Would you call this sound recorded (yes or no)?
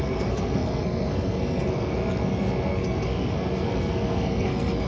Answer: no